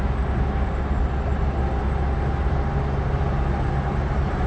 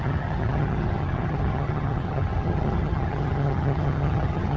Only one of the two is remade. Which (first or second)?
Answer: second